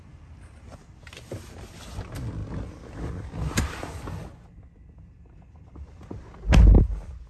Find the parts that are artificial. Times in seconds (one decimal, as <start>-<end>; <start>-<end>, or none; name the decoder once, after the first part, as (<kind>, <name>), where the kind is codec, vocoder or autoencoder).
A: none